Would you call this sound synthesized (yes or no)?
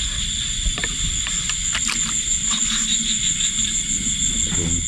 no